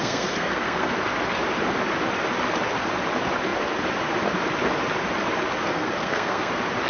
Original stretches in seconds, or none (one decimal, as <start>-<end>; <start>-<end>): 0.9-5.7; 6.5-6.9